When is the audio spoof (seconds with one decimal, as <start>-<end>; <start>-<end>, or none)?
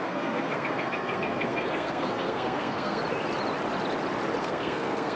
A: 0.0-3.0; 4.4-5.2